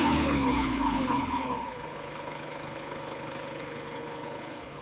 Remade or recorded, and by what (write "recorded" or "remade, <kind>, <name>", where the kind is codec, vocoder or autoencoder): remade, codec, HILCodec